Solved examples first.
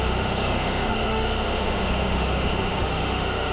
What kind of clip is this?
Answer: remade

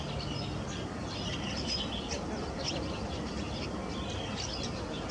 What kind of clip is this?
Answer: recorded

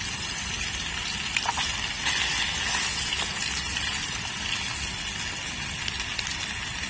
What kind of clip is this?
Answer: recorded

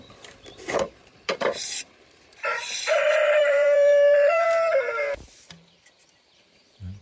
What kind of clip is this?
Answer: remade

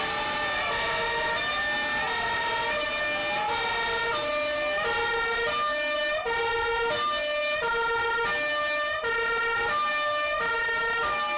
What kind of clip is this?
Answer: recorded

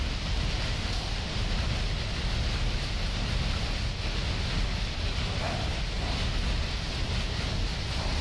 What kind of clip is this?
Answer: recorded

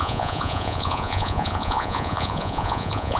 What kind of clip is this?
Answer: remade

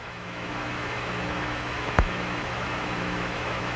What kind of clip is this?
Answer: remade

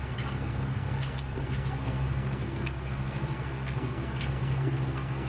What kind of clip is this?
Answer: remade